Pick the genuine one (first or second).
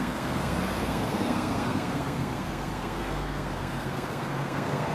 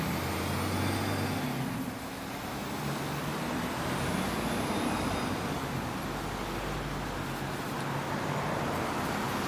second